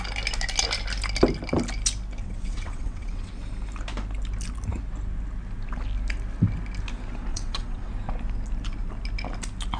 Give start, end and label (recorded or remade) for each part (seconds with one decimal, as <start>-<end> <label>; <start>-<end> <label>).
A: 0.0-2.2 recorded; 2.2-3.3 remade; 3.3-7.3 recorded; 7.3-7.9 remade; 7.9-9.8 recorded